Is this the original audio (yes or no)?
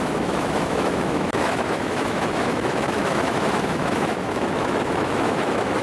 no